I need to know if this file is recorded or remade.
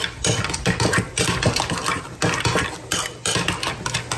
recorded